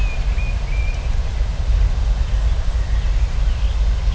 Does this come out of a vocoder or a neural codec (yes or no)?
no